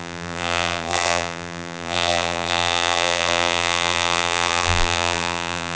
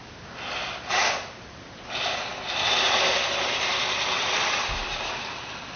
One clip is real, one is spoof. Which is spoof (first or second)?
first